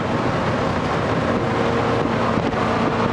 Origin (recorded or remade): recorded